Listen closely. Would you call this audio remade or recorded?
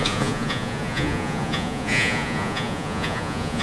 remade